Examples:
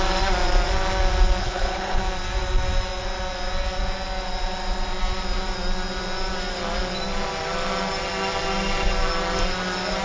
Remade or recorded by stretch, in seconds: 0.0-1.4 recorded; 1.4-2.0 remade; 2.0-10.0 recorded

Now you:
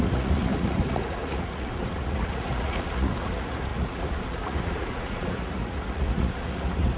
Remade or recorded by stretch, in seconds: 0.0-7.0 remade

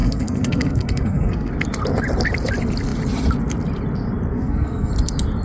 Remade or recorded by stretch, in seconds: 0.0-1.5 remade; 1.5-4.3 recorded; 4.3-4.9 remade; 4.9-5.4 recorded

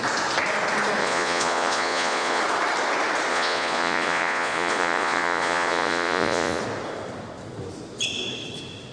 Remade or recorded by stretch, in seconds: 0.0-1.0 recorded; 1.0-2.4 remade; 2.4-3.3 recorded; 3.3-6.6 remade; 6.6-8.9 recorded

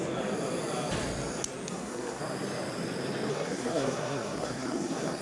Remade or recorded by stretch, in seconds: 0.0-1.7 recorded; 1.7-2.2 remade; 2.2-3.3 recorded; 3.3-5.2 remade

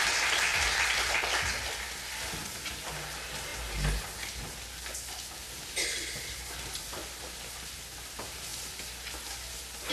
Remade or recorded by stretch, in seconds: 0.0-9.9 recorded

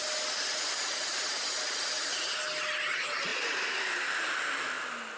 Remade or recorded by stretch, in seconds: 0.0-5.2 recorded

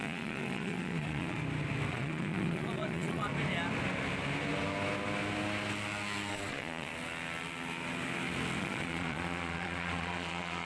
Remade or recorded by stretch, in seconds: 0.0-1.4 remade; 1.4-1.9 recorded; 1.9-3.3 remade; 3.3-6.3 recorded; 6.3-6.9 remade; 6.9-8.6 recorded; 8.6-10.6 remade